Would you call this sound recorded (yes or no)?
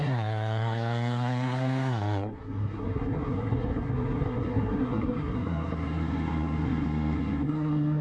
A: no